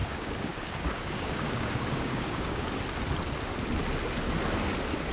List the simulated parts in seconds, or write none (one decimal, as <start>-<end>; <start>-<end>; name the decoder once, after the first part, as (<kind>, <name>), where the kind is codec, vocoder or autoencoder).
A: 0.0-2.7 (codec, DAC)

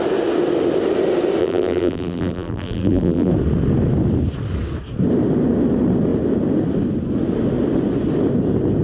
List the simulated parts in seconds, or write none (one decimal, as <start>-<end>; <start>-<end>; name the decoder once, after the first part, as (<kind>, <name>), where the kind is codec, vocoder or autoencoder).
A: 1.4-3.3 (vocoder, BigVGAN v2)

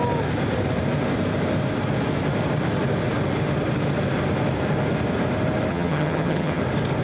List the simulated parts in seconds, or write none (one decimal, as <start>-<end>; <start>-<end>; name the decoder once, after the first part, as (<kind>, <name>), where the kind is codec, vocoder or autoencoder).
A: 5.7-6.6 (vocoder, HiFi-GAN)